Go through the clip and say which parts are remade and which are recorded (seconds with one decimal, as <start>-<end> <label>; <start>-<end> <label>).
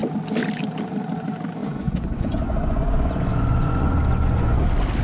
0.0-1.6 recorded; 1.6-4.6 remade; 4.6-5.0 recorded